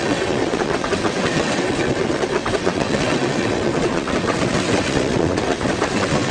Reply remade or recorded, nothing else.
remade